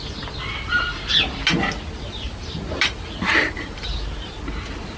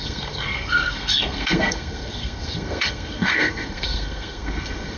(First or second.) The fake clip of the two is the second